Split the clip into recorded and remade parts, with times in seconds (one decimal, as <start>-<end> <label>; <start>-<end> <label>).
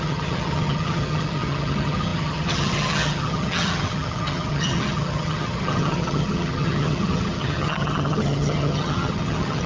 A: 0.0-9.7 remade